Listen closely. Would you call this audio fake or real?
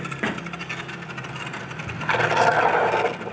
real